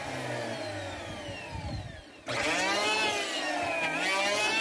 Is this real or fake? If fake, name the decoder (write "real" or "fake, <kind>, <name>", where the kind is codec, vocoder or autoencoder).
real